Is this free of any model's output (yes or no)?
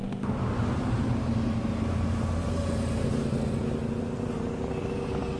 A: yes